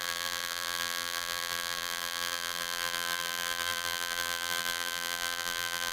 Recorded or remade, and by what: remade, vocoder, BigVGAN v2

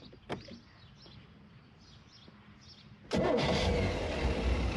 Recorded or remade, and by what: recorded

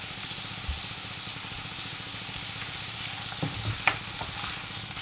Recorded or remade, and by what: recorded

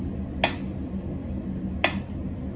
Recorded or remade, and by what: recorded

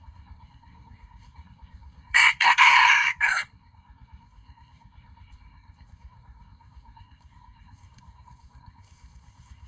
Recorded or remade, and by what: remade, codec, SNAC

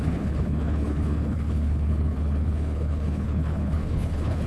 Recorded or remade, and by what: remade, codec, HILCodec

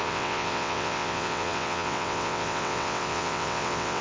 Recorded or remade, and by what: remade, vocoder, WaveNeXt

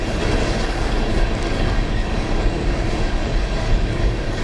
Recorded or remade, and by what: remade, codec, DAC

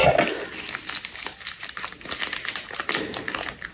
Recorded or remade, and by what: recorded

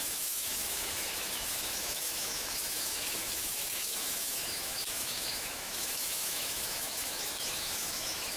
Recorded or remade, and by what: remade, autoencoder, DAC-VAE